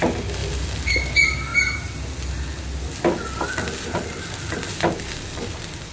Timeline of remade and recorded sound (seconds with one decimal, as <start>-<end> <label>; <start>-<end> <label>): 0.0-5.9 recorded